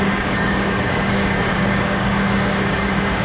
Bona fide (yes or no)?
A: no